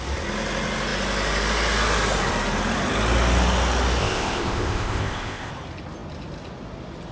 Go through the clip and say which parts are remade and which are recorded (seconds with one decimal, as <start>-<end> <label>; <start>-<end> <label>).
0.0-4.0 recorded; 4.0-5.5 remade; 5.5-7.1 recorded